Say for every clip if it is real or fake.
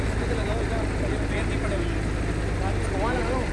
real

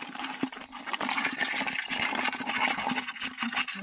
real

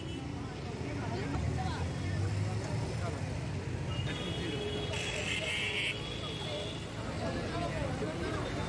real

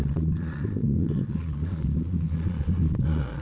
fake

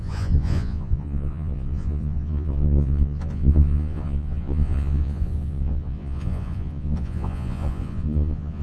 fake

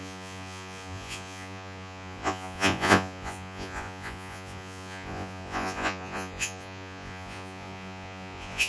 fake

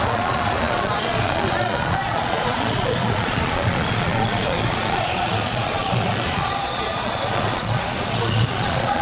fake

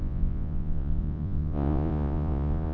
fake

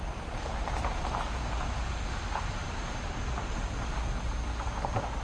real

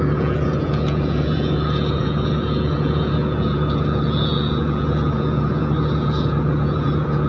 fake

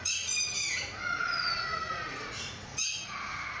fake